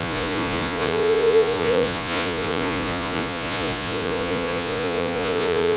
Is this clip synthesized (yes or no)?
yes